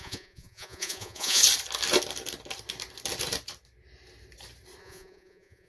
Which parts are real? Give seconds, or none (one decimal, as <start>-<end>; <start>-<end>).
1.4-4.8